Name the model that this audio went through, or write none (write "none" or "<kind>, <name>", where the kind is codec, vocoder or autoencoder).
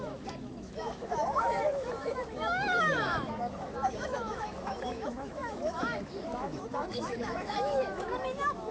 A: autoencoder, DAC-VAE